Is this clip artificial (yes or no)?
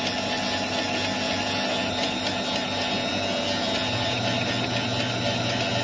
no